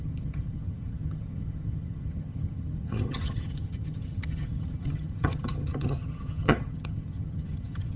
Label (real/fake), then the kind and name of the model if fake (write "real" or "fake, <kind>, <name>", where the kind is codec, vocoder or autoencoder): fake, vocoder, HiFi-GAN